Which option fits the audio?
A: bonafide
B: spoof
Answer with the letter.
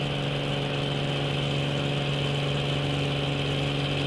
A